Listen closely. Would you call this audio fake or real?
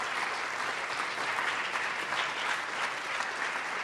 real